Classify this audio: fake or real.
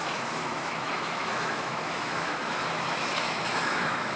fake